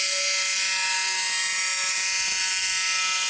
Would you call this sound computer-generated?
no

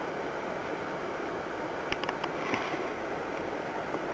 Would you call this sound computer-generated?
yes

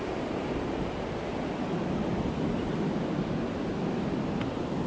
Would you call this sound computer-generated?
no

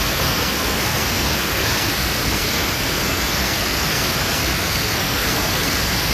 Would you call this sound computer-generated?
yes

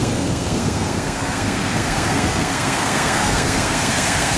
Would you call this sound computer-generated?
yes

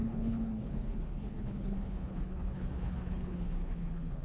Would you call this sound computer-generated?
yes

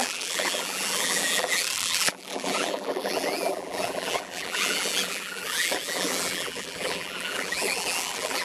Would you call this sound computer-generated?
yes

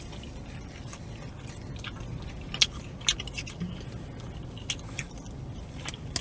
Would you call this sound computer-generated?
no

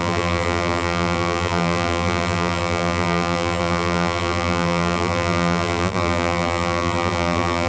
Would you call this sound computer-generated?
yes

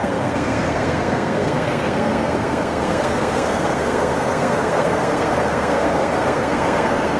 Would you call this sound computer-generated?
yes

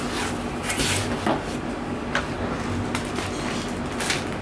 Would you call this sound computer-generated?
no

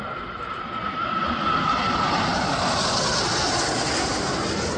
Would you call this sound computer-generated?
no